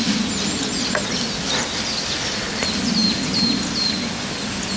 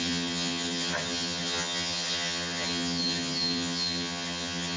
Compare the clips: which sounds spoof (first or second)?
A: second